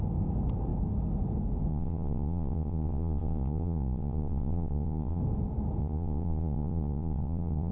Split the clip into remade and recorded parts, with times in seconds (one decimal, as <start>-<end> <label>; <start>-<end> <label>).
0.0-1.7 recorded; 1.7-5.2 remade; 5.2-5.8 recorded; 5.8-7.7 remade